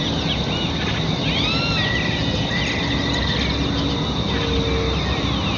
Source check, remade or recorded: recorded